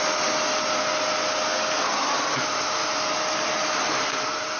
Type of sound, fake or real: real